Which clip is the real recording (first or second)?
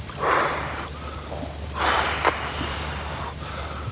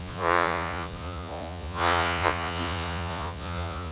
first